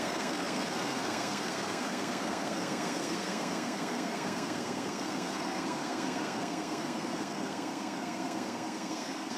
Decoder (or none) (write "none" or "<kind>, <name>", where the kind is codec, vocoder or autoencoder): codec, SNAC